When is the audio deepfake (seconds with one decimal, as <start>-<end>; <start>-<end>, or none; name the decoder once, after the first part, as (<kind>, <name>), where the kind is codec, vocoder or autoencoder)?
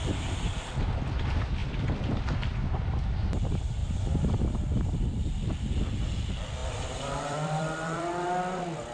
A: 1.6-2.4 (vocoder, BigVGAN v2); 3.8-4.4; 6.6-8.1